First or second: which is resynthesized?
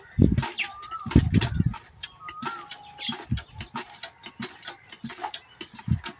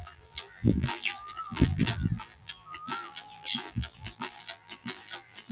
second